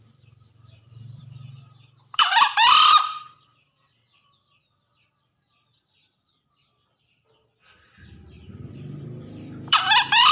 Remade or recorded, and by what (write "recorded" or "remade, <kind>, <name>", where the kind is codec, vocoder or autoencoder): remade, vocoder, BigVGAN v2